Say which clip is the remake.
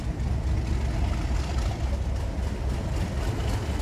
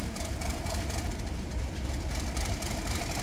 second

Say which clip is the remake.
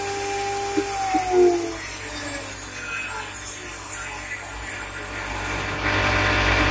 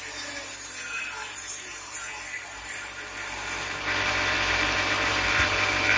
second